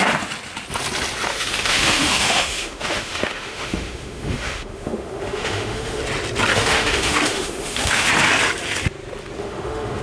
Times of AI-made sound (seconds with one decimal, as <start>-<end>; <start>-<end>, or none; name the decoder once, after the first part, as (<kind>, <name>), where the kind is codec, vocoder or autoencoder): 1.3-6.0 (autoencoder, DAC-VAE); 6.5-8.1; 9.4-10.0